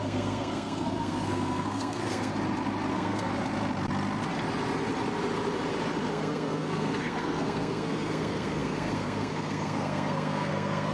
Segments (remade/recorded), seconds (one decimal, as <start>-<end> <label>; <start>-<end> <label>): 0.0-2.3 remade; 2.3-2.9 recorded; 2.9-3.3 remade; 3.3-6.1 recorded; 6.1-10.9 remade